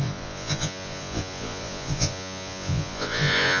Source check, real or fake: fake